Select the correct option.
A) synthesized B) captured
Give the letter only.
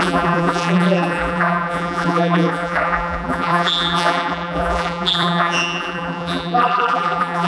A